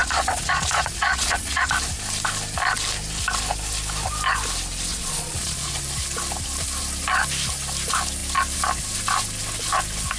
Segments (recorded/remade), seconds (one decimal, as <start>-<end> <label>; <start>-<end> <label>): 0.0-1.7 remade; 1.7-4.9 recorded; 4.9-5.8 remade; 5.8-10.2 recorded